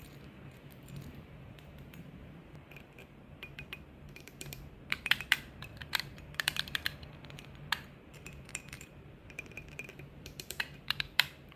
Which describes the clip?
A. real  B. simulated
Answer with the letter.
B